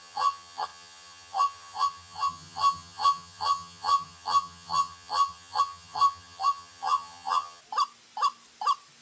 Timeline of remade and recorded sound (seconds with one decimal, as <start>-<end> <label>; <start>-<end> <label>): 0.0-7.6 remade; 7.6-9.0 recorded